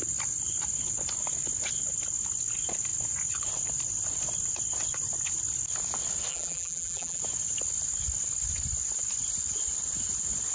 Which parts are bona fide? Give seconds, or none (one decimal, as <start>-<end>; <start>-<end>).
0.0-6.3; 7.2-10.5